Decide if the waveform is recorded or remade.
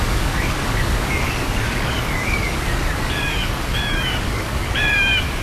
remade